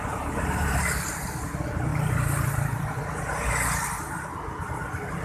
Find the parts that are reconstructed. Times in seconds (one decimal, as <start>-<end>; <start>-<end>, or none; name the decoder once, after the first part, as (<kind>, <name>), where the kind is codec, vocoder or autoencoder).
none